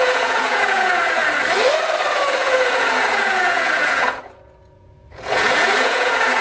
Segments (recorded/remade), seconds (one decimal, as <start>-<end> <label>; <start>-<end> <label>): 0.0-1.2 remade; 1.2-2.1 recorded; 2.1-6.4 remade